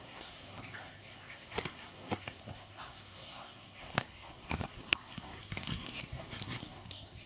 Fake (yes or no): yes